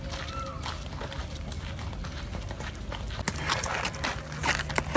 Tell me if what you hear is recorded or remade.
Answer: recorded